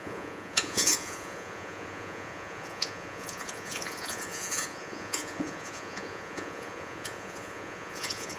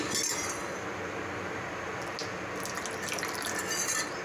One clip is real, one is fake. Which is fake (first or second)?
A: first